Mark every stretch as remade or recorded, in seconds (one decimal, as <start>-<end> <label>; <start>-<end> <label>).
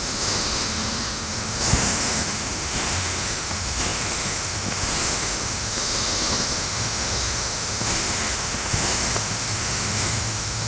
0.0-10.7 remade